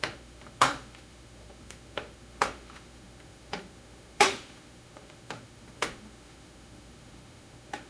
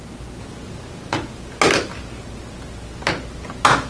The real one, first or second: second